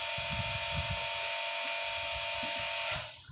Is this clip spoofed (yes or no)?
no